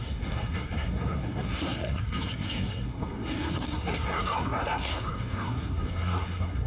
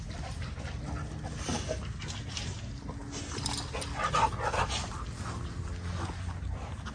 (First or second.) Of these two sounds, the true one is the second